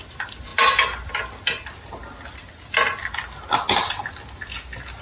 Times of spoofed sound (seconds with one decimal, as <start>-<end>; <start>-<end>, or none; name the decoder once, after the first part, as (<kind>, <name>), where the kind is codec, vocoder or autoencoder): none